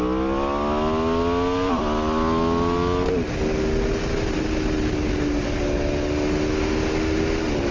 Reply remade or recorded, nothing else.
recorded